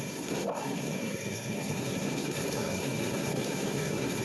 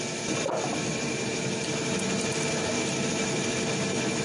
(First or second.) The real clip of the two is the second